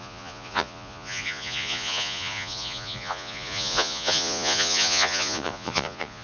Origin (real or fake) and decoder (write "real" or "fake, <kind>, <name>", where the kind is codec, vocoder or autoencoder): fake, vocoder, Vocos